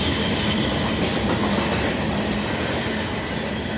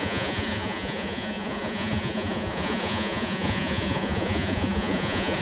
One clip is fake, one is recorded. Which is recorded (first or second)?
first